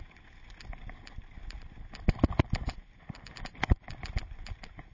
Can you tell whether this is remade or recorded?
recorded